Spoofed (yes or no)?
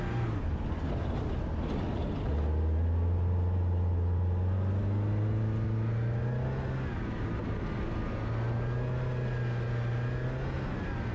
no